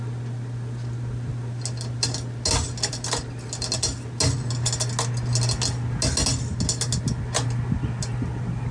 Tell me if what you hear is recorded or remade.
recorded